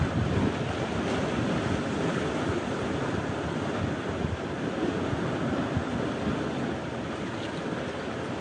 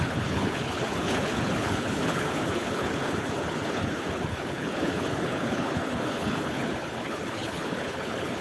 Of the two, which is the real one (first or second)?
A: first